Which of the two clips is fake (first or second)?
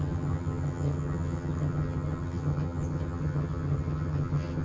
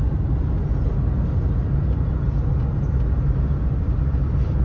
first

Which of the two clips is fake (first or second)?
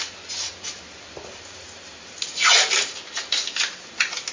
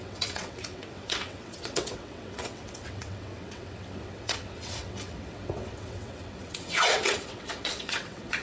second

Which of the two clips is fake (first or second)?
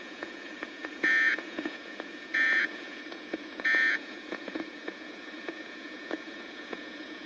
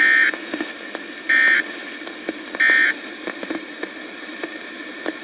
first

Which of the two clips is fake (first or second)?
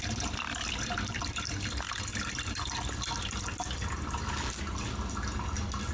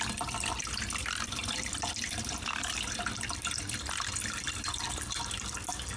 second